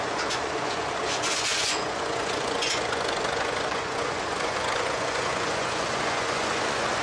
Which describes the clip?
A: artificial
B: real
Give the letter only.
A